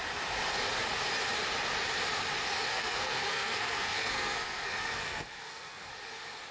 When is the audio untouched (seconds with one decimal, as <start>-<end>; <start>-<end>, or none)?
0.0-2.7; 5.9-6.5